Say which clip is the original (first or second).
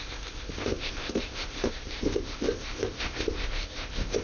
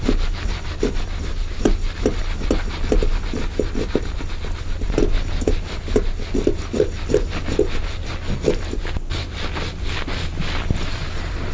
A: second